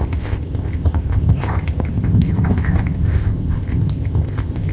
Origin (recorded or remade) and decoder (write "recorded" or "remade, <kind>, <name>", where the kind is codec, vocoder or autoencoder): remade, codec, ZipCodec